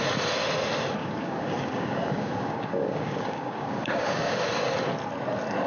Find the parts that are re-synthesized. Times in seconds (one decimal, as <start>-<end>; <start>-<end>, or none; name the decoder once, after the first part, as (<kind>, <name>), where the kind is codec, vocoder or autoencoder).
1.0-4.4 (codec, DAC)